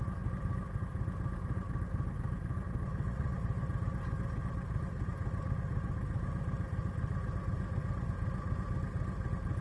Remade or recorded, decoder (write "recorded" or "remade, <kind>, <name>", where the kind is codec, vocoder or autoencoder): recorded